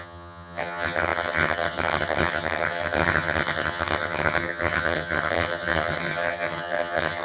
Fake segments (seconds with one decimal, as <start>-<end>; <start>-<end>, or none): 0.0-7.2

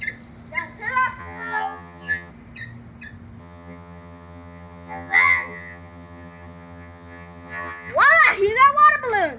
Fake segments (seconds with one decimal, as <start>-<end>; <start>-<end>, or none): 1.2-2.3; 3.4-7.9

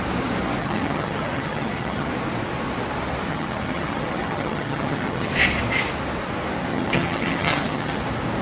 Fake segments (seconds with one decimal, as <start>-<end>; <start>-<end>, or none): 0.6-2.1; 3.3-5.3; 6.7-8.0

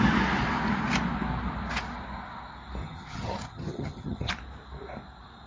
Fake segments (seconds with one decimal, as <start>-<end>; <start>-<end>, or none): 2.8-4.3

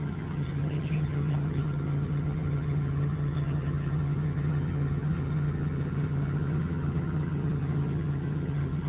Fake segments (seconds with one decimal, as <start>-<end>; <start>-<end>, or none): 0.0-8.9

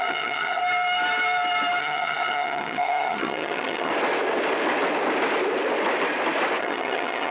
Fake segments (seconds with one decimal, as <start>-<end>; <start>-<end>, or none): 0.0-0.6; 1.8-3.9; 6.6-7.3